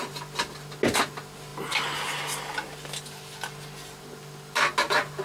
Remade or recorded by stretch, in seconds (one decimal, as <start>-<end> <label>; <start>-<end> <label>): 0.0-5.2 recorded

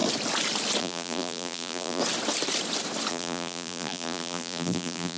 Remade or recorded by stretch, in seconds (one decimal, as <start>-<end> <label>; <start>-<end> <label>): 0.0-0.8 recorded; 0.8-2.0 remade; 2.0-3.1 recorded; 3.1-5.2 remade

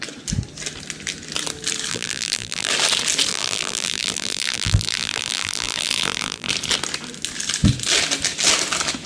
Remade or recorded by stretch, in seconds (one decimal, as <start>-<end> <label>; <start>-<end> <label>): 0.0-1.9 recorded; 1.9-2.7 remade; 2.7-3.3 recorded; 3.3-6.5 remade; 6.5-9.1 recorded

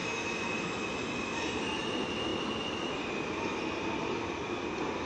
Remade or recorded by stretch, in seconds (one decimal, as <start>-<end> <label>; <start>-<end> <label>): 0.0-1.8 remade; 1.8-5.1 recorded

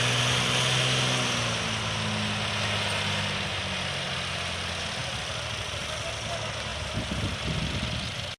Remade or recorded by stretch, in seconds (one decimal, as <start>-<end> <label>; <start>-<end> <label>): 0.0-8.4 recorded

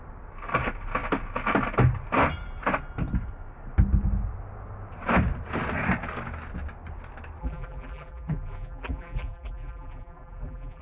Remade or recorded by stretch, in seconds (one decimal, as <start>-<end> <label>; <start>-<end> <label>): 0.0-7.4 recorded; 7.4-10.8 remade

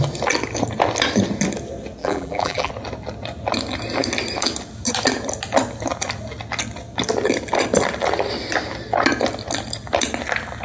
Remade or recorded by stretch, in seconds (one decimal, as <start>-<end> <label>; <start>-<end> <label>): 0.0-2.0 recorded; 2.0-2.7 remade; 2.7-10.6 recorded

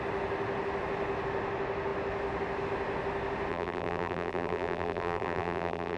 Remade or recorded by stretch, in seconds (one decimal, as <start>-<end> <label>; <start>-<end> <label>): 0.0-3.5 recorded; 3.5-6.0 remade